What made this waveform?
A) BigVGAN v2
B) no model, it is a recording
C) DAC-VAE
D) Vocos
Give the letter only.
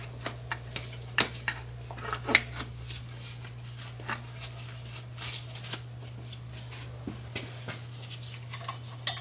B